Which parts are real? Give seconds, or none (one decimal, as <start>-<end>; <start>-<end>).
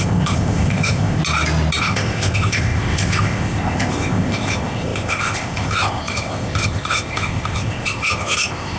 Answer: 1.2-1.8